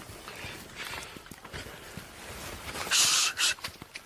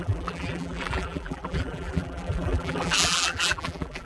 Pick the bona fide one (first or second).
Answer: first